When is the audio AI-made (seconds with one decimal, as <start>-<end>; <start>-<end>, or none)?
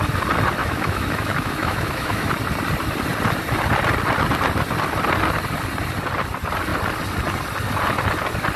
0.6-2.3